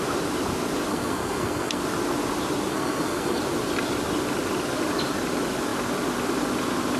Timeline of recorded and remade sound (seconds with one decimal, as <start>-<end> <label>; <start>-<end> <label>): 0.0-0.9 recorded; 0.9-1.8 remade; 1.8-2.7 recorded; 2.7-3.4 remade; 3.4-7.0 recorded